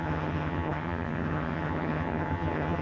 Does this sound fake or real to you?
fake